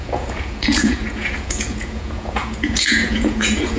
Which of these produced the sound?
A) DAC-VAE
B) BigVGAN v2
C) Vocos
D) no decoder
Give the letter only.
C